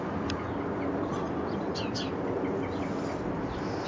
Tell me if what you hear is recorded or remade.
recorded